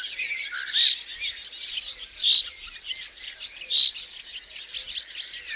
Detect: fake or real real